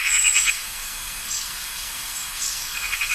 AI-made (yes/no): yes